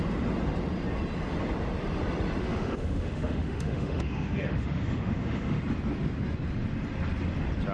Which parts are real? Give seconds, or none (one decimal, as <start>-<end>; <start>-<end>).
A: 0.0-2.4; 5.6-7.7